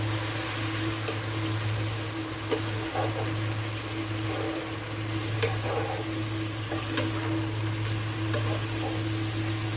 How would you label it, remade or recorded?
recorded